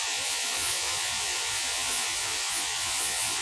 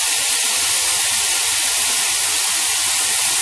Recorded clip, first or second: second